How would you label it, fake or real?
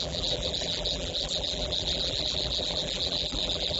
fake